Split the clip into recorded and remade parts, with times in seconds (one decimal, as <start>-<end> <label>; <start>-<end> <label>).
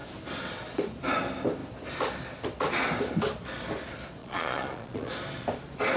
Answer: 0.0-4.2 recorded; 4.2-5.1 remade; 5.1-6.0 recorded